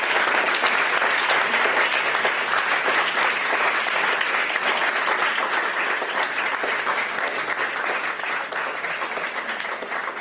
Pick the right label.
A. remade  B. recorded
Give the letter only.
B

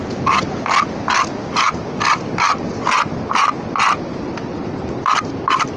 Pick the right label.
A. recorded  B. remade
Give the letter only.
A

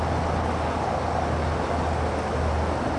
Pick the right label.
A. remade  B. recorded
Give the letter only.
B